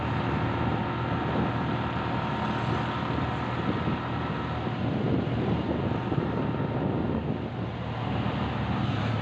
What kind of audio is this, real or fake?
real